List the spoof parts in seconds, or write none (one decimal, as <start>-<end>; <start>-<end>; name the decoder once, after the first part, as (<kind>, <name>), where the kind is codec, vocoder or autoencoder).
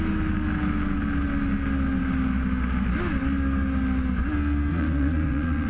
4.7-5.7 (vocoder, Vocos)